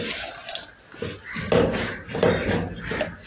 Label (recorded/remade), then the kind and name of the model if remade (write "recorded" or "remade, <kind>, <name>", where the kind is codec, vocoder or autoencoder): recorded